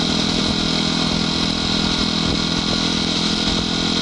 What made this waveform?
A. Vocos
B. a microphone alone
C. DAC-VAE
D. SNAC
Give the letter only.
B